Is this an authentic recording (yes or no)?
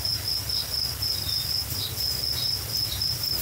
no